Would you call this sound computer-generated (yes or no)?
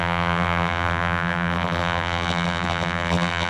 yes